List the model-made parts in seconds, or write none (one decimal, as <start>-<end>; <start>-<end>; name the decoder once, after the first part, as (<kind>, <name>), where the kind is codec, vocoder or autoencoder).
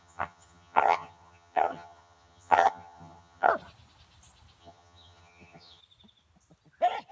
0.0-3.5 (vocoder, HiFi-GAN); 4.6-5.8